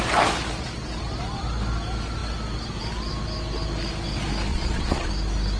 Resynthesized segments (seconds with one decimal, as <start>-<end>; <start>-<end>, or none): 4.5-5.1